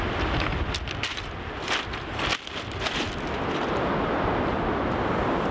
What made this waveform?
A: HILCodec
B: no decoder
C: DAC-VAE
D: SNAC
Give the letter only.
B